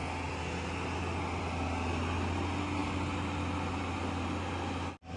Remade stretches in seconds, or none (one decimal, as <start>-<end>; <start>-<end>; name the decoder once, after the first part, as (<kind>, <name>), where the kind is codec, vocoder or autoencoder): none